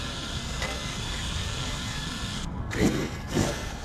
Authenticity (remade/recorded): remade